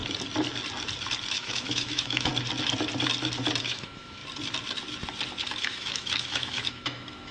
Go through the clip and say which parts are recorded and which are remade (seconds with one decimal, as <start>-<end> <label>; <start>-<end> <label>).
0.0-1.3 recorded; 1.3-2.3 remade; 2.3-3.6 recorded; 3.6-4.2 remade; 4.2-5.4 recorded; 5.4-7.3 remade